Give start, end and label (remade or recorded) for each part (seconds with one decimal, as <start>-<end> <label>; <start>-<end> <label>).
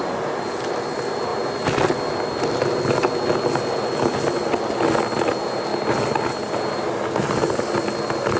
0.0-8.4 recorded